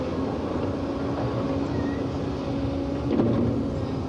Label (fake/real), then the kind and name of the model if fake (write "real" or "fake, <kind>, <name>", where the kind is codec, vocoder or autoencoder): real